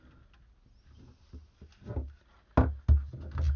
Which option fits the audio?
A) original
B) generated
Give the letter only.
A